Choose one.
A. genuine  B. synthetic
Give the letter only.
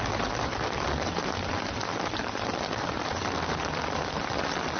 B